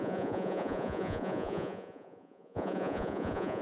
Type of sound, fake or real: fake